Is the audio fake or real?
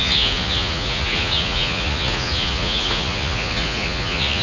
fake